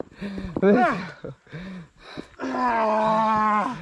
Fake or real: real